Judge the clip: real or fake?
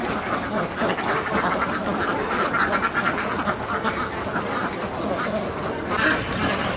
real